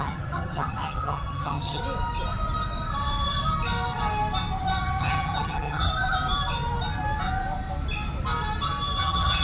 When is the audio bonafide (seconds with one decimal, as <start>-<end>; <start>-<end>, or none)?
1.8-5.0; 5.9-9.0